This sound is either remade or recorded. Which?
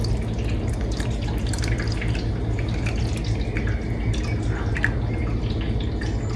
recorded